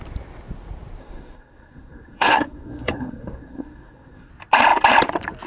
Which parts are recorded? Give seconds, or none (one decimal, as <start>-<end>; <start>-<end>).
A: 0.0-1.0; 4.3-5.5